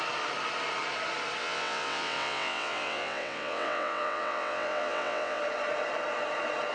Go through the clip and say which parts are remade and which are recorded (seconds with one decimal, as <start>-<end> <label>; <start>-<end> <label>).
0.0-1.4 recorded; 1.4-5.4 remade; 5.4-6.7 recorded